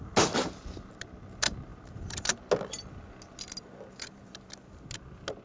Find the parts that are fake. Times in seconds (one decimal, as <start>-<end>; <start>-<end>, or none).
none